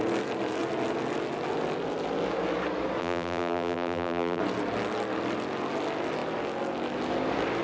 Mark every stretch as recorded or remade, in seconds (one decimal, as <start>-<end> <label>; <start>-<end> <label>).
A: 0.0-3.0 recorded; 3.0-4.4 remade; 4.4-7.6 recorded